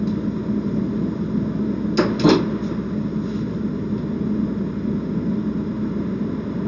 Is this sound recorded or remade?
recorded